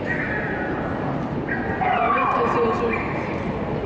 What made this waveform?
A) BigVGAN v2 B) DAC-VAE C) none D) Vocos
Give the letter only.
C